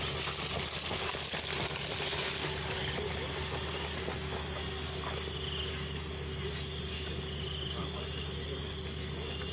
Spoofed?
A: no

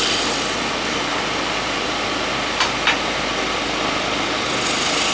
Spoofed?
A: no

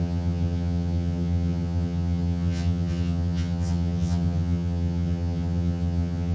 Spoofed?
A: yes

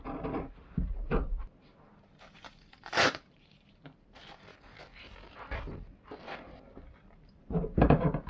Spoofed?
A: yes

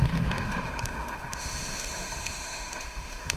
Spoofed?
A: yes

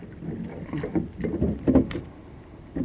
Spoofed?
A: no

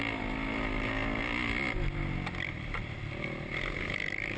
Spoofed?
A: no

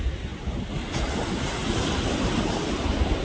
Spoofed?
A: no